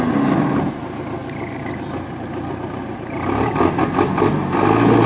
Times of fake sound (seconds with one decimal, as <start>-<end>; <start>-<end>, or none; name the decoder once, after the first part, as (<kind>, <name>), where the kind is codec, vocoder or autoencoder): 1.2-2.8 (vocoder, BigVGAN v2)